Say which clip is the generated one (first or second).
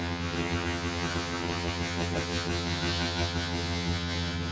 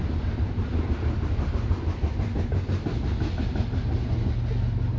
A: first